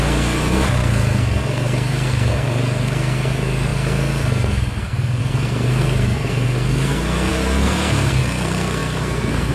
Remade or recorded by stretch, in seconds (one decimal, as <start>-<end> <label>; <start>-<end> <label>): 0.0-9.5 remade